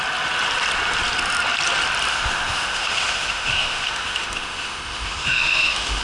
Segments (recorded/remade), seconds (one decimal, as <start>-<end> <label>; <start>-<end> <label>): 0.0-2.1 recorded; 2.1-6.0 remade